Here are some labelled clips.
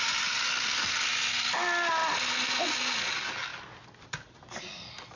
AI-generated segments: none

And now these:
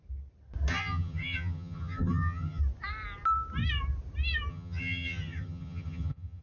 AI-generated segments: 0.7-2.6 (vocoder, HiFi-GAN); 4.5-6.4